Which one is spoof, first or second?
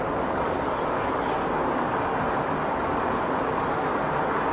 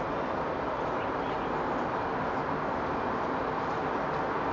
first